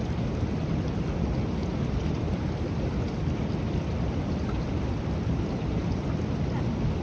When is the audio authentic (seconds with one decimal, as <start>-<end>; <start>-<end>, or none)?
0.0-1.6; 2.8-7.0